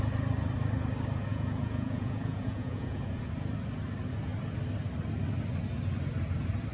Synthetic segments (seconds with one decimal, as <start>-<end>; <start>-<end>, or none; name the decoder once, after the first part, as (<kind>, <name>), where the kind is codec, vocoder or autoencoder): 1.3-3.2 (vocoder, Vocos)